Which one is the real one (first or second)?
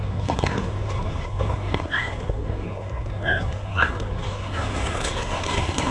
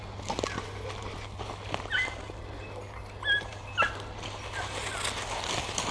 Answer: second